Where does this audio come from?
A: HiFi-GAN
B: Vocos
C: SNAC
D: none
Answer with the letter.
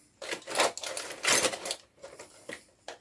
D